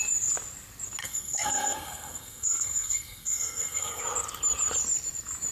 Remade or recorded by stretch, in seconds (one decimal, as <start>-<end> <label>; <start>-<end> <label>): 0.0-1.0 recorded; 1.0-4.0 remade; 4.0-5.5 recorded